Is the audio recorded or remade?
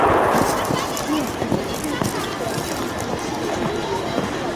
recorded